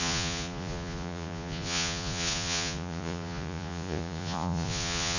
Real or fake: fake